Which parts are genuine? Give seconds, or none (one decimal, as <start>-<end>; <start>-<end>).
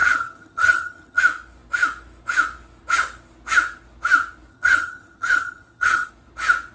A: 1.2-4.5; 6.1-6.7